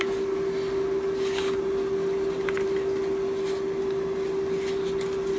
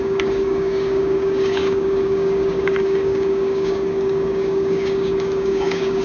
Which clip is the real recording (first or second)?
first